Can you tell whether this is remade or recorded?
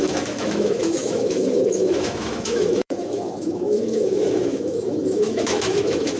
remade